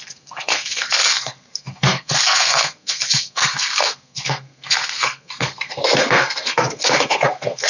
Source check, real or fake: fake